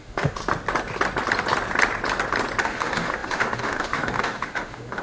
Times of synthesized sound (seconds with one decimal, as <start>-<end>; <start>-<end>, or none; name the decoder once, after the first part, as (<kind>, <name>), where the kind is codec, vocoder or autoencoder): 0.0-0.4 (autoencoder, DAC-VAE); 2.6-5.0